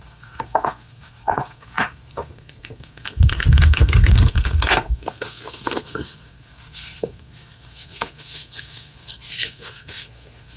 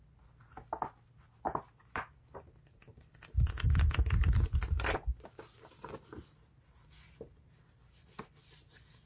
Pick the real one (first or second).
second